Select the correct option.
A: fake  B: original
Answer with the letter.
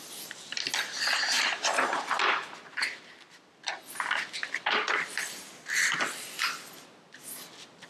B